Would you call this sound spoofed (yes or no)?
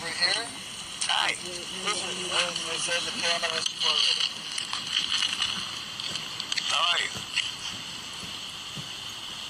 no